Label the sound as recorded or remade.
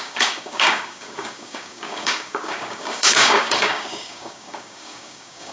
remade